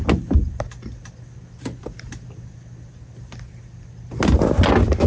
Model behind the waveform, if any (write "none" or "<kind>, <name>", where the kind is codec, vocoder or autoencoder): none